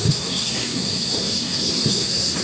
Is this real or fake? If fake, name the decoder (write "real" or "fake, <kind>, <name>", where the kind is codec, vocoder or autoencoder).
fake, codec, SNAC